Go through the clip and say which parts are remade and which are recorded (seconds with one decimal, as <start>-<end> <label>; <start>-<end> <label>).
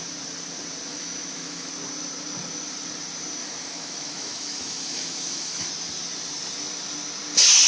0.0-0.9 recorded; 0.9-1.7 remade; 1.7-3.4 recorded; 3.4-5.7 remade; 5.7-7.7 recorded